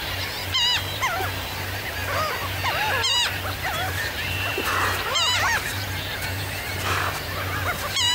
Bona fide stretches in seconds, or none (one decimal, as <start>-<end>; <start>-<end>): 2.0-3.1